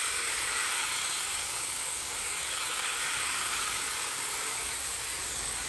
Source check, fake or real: fake